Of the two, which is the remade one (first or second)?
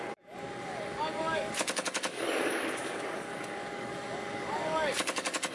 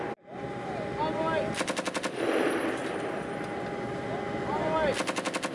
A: first